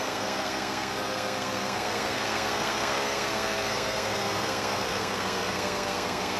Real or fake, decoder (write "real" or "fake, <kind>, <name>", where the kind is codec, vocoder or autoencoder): fake, codec, SNAC